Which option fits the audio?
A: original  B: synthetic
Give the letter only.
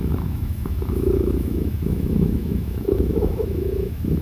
B